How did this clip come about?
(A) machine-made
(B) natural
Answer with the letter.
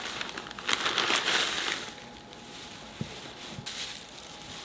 B